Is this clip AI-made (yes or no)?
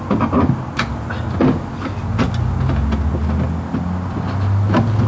no